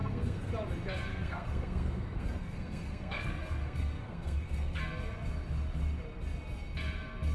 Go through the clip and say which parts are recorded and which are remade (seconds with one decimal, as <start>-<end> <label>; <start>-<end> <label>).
0.0-0.5 remade; 0.5-1.1 recorded; 1.1-4.8 remade; 4.8-7.3 recorded